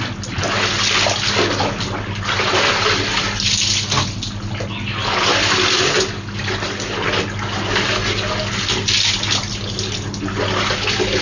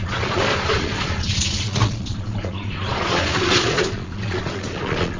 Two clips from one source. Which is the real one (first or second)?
first